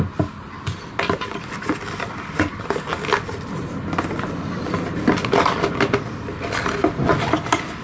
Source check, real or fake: real